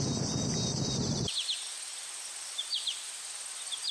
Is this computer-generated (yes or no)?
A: no